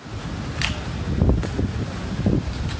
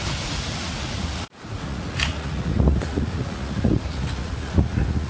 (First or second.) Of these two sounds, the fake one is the second